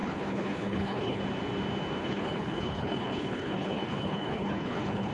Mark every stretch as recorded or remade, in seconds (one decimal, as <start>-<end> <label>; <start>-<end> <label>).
0.0-1.2 remade; 1.2-2.0 recorded; 2.0-5.1 remade